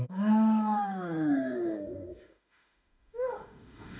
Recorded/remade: remade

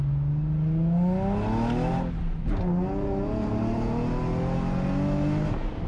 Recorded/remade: recorded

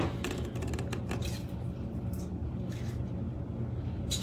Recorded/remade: recorded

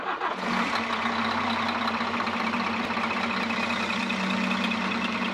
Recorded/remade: recorded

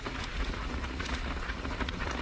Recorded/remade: remade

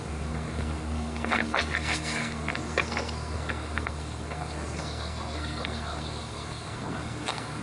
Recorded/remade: remade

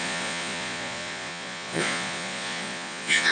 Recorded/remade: remade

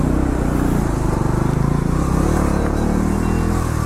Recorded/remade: recorded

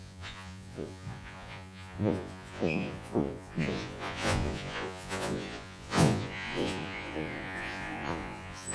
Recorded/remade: remade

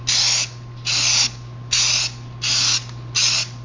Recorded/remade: recorded